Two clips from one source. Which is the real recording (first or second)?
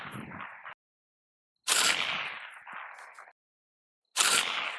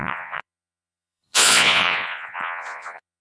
first